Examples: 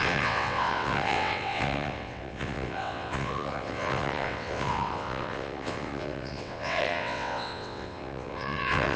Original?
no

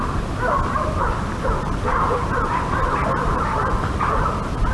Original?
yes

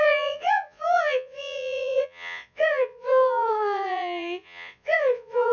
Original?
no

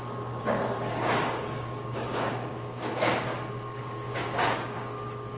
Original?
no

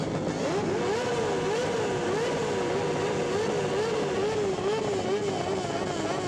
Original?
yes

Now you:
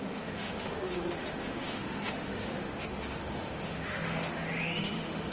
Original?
no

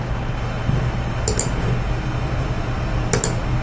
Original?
yes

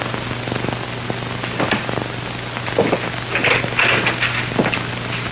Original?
yes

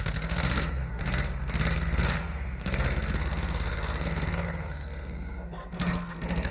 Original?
no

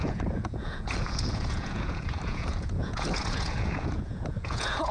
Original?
no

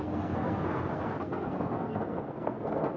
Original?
no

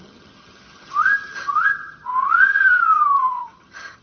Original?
no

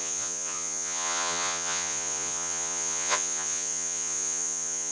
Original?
no